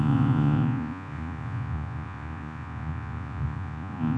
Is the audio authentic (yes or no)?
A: no